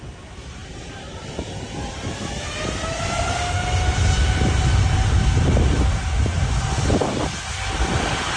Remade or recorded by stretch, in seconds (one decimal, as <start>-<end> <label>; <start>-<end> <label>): 0.0-8.4 recorded